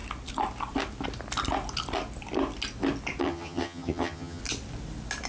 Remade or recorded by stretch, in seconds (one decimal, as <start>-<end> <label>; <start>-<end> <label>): 0.0-3.2 recorded; 3.2-4.4 remade; 4.4-5.3 recorded